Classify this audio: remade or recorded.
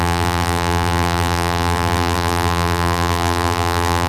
remade